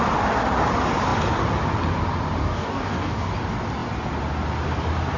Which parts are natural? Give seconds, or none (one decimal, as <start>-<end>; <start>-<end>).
0.0-2.4; 3.3-5.2